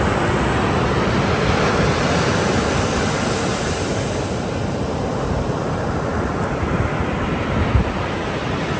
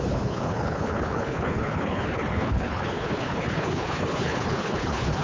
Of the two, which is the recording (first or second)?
first